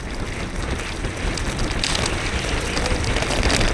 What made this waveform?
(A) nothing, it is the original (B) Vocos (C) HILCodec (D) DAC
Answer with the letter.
A